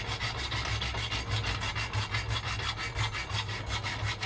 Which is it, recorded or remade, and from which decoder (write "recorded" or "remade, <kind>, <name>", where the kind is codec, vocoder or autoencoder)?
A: recorded